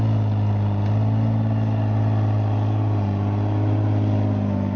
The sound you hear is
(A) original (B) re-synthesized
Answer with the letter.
A